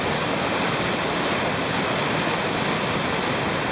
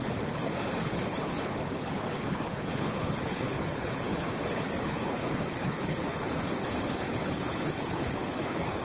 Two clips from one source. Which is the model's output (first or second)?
second